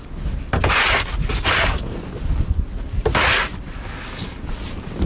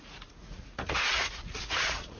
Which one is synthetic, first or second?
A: second